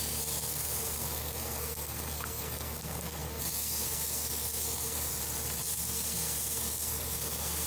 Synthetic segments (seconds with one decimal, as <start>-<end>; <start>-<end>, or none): 0.0-5.1; 5.6-7.7